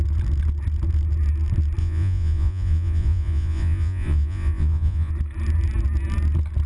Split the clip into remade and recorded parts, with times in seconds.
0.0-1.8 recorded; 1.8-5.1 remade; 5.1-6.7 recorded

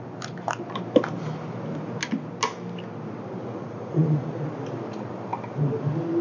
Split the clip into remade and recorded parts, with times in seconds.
0.0-3.4 recorded; 3.4-4.5 remade; 4.5-6.2 recorded

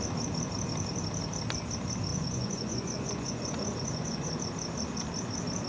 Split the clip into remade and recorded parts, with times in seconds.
0.0-2.1 recorded; 2.1-4.4 remade; 4.4-5.7 recorded